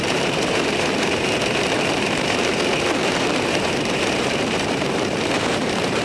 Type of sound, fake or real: fake